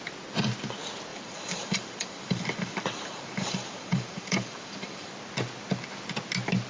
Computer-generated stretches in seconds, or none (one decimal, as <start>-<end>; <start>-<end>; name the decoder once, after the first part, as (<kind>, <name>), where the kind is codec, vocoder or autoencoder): 1.1-5.1 (vocoder, BigVGAN v2)